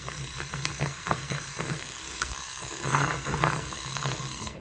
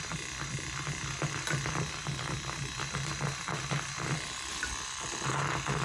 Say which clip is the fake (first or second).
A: first